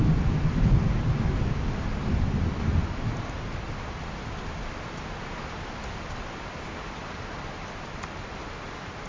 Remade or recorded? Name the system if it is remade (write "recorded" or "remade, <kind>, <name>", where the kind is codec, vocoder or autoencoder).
recorded